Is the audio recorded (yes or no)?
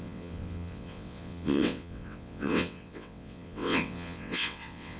no